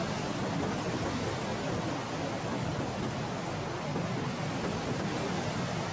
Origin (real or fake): real